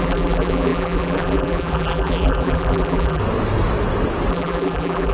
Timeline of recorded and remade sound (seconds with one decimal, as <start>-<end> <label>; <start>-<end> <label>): 0.0-3.2 remade; 3.2-4.3 recorded; 4.3-5.1 remade